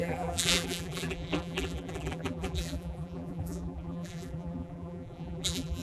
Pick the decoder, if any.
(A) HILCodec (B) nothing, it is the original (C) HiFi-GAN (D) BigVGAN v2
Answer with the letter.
D